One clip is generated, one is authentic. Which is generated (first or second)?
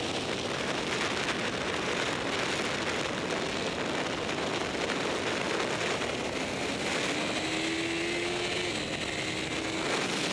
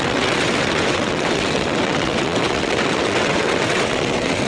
second